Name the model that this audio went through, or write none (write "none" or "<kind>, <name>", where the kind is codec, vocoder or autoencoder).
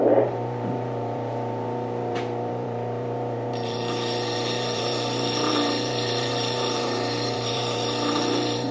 vocoder, BigVGAN v2